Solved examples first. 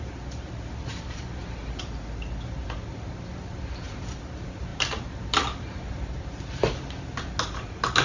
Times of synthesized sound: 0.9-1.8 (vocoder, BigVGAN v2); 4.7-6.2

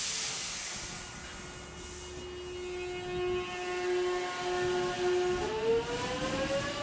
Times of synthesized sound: none